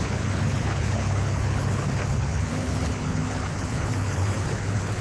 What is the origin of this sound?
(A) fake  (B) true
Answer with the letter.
A